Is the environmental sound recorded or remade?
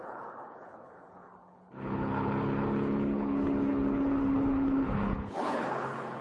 remade